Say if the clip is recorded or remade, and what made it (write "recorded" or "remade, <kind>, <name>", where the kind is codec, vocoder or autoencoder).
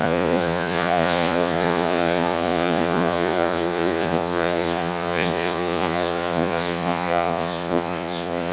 remade, vocoder, Vocos